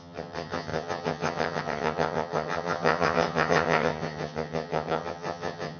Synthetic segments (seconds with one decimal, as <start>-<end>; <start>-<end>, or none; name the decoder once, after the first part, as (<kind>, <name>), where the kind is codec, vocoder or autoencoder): 0.0-5.8 (vocoder, HiFi-GAN)